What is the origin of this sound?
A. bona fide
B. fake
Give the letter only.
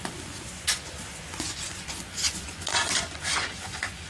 B